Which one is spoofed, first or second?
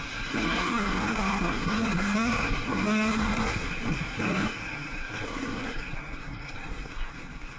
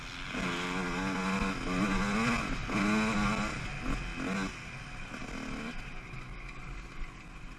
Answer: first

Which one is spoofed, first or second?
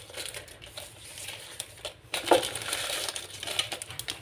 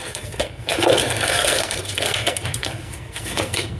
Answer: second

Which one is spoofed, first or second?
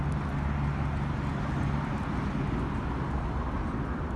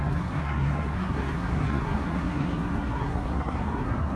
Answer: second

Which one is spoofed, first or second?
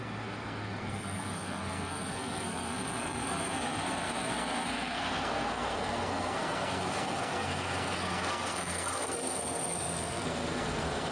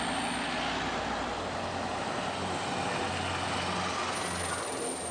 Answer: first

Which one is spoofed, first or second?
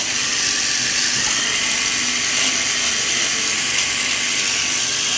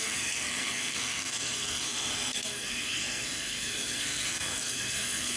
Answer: second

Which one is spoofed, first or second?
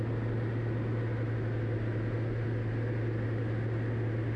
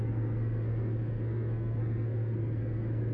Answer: second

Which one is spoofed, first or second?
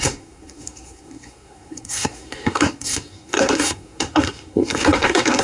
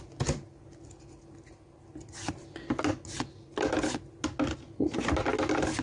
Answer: first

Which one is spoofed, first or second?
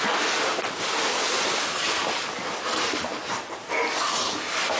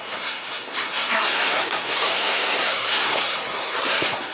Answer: second